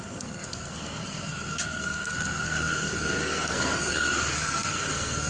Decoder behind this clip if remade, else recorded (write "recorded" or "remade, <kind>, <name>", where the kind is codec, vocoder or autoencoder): remade, codec, SNAC